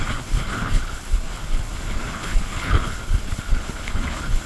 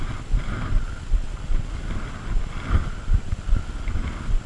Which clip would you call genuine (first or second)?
second